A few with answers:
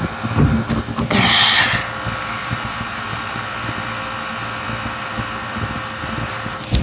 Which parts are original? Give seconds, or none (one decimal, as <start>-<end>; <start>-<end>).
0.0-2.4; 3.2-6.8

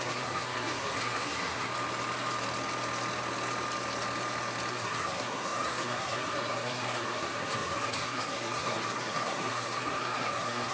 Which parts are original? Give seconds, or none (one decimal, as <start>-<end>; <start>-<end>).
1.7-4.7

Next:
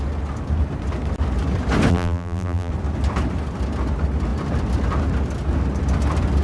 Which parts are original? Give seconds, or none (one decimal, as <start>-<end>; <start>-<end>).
0.0-1.9; 2.7-6.4

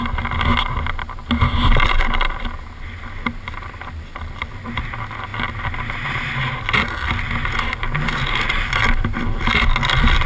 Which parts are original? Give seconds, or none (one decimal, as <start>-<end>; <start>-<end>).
0.0-10.3

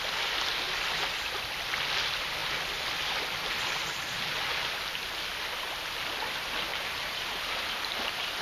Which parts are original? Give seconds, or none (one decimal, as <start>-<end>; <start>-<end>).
0.0-6.7

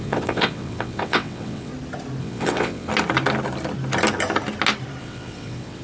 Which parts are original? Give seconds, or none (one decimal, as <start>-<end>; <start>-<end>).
1.7-2.2; 2.9-5.0